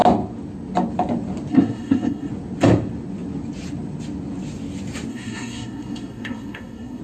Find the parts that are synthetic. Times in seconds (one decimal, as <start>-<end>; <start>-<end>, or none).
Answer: 1.5-2.3; 5.1-7.0